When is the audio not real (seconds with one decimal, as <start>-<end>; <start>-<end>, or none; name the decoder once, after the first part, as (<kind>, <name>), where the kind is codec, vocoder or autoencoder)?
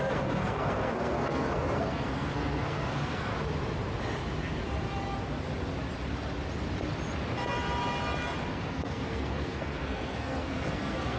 0.0-3.3 (codec, SNAC); 8.5-11.2